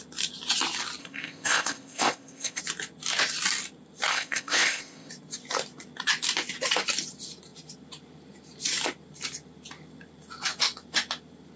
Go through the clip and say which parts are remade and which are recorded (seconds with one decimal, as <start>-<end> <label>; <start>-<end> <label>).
0.0-1.0 recorded; 1.0-2.6 remade; 2.6-4.1 recorded; 4.1-5.1 remade; 5.1-11.6 recorded